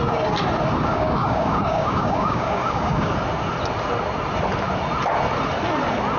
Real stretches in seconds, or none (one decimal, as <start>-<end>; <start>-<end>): 0.0-0.9; 3.1-6.2